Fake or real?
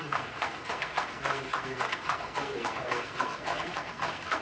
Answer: fake